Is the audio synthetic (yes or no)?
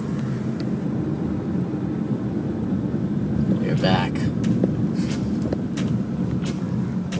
no